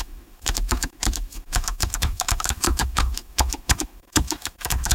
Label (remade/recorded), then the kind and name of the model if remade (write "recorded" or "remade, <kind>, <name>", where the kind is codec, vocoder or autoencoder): remade, autoencoder, DAC-VAE